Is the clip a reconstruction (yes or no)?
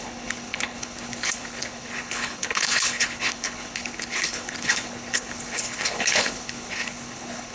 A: yes